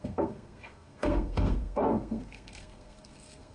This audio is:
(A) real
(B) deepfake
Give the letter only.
B